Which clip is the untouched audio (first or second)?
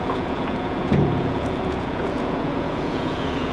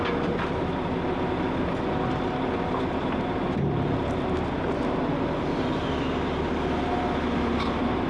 second